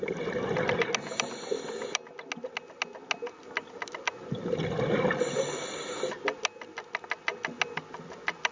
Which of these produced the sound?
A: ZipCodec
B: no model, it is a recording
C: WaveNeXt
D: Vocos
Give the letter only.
B